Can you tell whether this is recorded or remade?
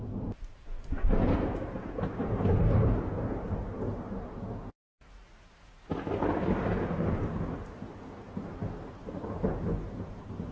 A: recorded